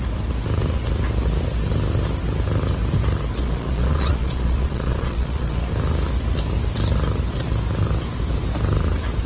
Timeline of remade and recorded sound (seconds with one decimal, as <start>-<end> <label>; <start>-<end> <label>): 0.0-3.4 recorded; 3.4-5.7 remade; 5.7-9.3 recorded